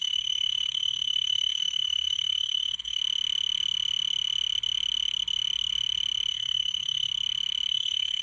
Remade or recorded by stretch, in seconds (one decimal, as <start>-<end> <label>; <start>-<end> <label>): 0.0-3.0 remade; 3.0-6.3 recorded; 6.3-7.1 remade; 7.1-7.7 recorded; 7.7-8.2 remade